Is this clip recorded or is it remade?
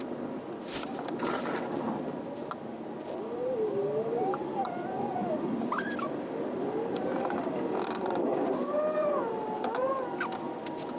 recorded